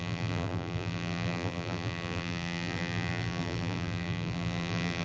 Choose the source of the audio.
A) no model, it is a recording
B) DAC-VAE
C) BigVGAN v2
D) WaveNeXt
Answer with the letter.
C